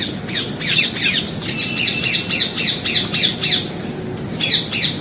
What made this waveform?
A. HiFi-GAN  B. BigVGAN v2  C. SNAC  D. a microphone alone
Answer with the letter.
D